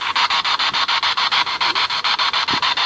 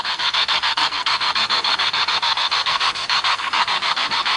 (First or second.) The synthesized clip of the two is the second